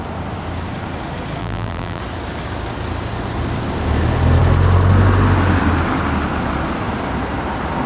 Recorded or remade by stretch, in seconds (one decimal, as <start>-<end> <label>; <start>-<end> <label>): 0.0-1.4 recorded; 1.4-2.0 remade; 2.0-7.9 recorded